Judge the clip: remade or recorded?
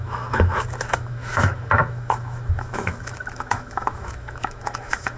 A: remade